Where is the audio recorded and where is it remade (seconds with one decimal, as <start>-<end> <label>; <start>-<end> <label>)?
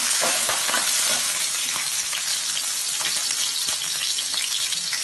0.0-0.6 remade; 0.6-1.2 recorded; 1.2-2.3 remade; 2.3-3.8 recorded; 3.8-5.0 remade